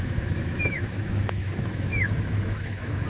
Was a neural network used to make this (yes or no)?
yes